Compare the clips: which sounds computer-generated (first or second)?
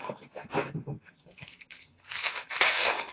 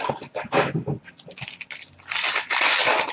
first